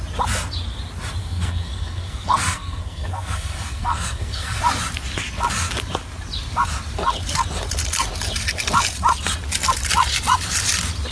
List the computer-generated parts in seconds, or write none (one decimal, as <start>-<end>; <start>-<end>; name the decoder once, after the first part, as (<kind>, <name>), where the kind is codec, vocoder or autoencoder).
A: 1.2-4.6 (codec, SNAC)